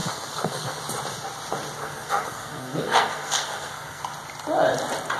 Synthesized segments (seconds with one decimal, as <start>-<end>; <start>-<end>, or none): 0.0-0.8; 1.8-4.0

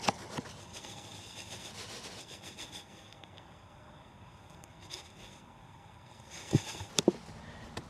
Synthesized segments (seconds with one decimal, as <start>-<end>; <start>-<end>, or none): 0.6-1.7; 2.2-6.9

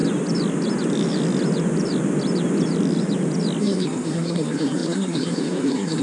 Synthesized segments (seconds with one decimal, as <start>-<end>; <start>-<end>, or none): 3.6-6.0